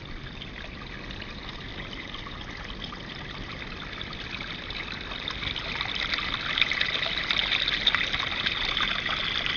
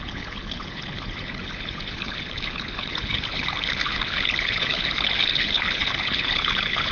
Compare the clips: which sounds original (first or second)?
first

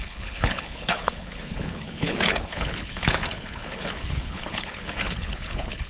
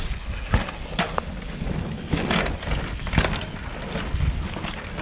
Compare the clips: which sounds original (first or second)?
second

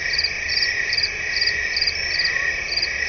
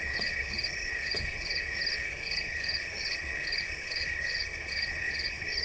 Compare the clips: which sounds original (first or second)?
first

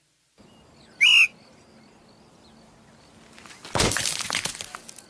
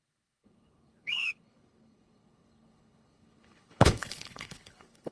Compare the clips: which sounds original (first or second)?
first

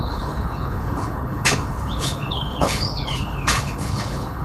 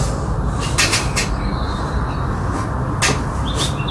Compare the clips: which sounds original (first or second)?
second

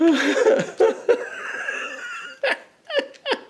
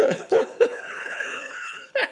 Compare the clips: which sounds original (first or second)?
first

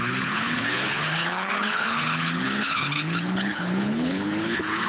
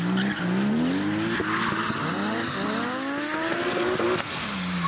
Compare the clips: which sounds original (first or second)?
second